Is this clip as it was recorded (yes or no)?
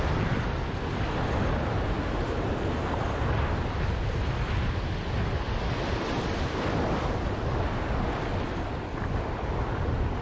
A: yes